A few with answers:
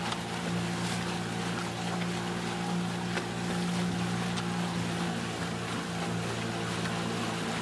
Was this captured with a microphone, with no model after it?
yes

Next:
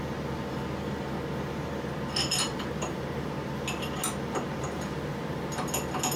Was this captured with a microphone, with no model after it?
yes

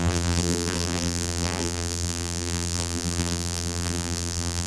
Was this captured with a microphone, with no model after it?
no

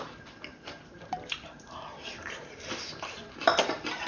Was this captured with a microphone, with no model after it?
no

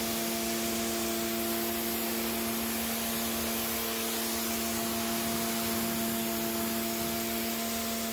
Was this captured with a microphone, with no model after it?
yes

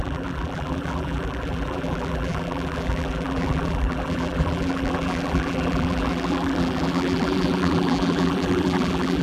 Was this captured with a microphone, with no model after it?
no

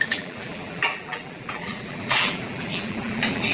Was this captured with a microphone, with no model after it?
no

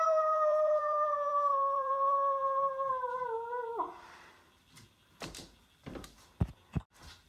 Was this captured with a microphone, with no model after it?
no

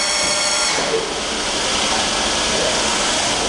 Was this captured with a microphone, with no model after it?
yes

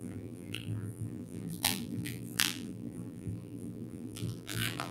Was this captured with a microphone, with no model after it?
no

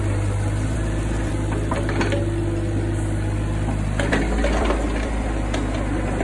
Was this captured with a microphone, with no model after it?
no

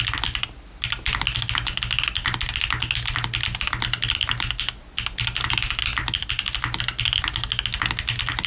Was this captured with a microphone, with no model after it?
yes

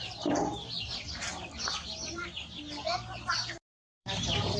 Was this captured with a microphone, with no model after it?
no